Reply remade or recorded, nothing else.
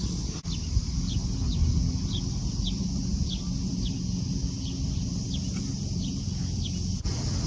recorded